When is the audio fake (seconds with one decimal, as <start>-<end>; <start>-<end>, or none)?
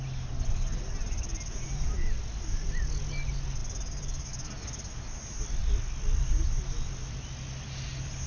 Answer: none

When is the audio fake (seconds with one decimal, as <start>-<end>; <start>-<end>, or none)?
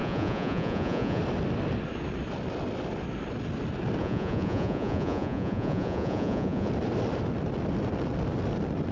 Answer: 0.0-1.2; 4.0-6.7